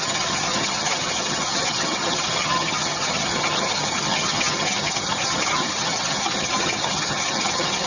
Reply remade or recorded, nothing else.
remade